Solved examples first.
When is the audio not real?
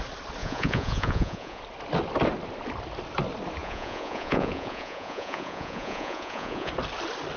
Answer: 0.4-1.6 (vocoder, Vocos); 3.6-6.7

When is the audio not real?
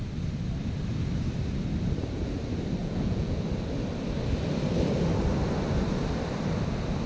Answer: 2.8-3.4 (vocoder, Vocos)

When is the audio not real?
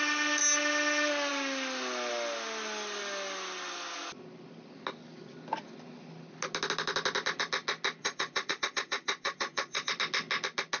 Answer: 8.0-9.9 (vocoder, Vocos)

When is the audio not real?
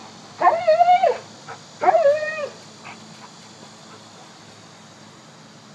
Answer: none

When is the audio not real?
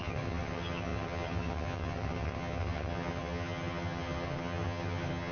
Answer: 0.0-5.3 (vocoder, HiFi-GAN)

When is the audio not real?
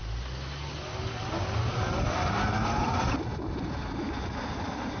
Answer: none